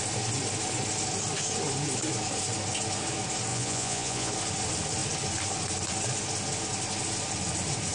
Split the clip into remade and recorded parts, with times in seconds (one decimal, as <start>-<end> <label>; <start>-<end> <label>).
0.0-3.5 recorded; 3.5-4.3 remade; 4.3-7.9 recorded